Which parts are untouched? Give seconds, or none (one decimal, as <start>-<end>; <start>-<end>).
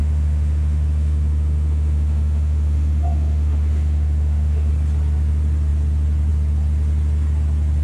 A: 4.7-7.8